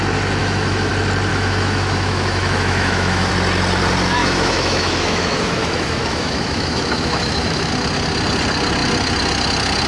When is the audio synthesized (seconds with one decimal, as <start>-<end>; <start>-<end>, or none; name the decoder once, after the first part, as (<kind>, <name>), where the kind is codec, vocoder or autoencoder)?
0.4-0.9 (autoencoder, DAC-VAE); 1.3-3.3; 4.2-7.7